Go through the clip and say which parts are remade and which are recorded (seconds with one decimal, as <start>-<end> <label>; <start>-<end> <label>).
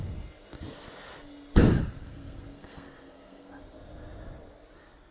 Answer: 0.0-2.0 recorded; 2.0-3.6 remade; 3.6-5.1 recorded